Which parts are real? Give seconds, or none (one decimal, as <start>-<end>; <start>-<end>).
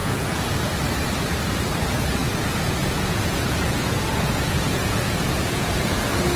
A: 0.5-2.2; 6.0-6.4